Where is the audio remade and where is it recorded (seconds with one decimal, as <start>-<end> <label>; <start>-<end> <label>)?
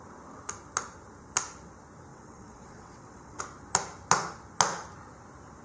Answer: 0.0-2.1 recorded; 2.1-3.4 remade; 3.4-5.6 recorded